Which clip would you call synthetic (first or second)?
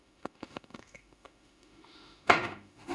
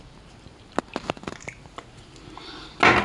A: first